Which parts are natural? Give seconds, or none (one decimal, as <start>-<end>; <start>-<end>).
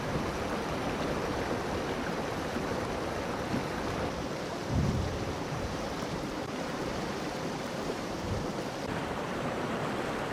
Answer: 0.0-4.6; 9.9-10.3